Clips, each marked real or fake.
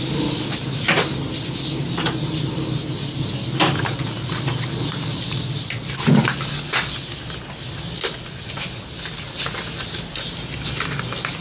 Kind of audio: real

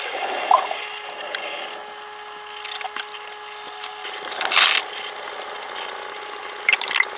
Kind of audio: real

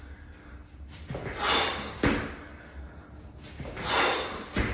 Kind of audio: real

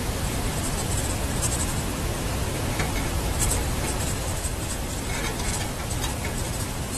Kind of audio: fake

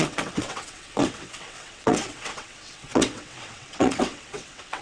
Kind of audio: fake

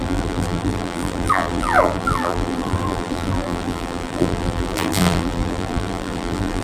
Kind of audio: fake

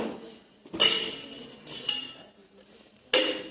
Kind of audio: real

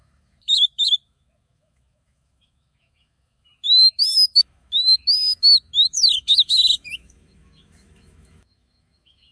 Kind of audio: fake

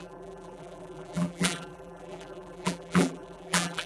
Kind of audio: fake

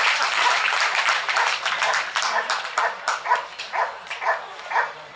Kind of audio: fake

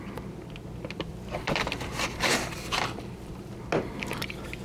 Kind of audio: real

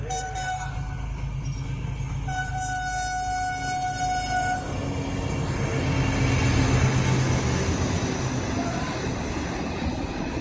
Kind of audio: real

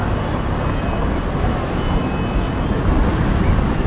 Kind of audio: real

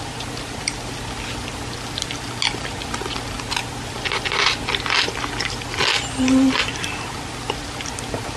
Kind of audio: real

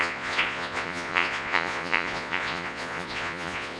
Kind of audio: fake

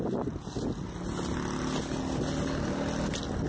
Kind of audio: real